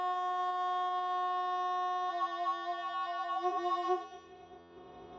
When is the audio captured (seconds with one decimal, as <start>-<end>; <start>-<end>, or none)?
0.0-2.1